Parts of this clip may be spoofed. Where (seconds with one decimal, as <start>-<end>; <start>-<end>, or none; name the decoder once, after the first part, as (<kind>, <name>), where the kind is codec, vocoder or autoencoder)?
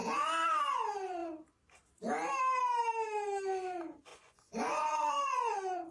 4.1-5.9 (vocoder, Vocos)